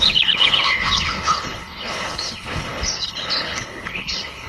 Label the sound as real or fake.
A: fake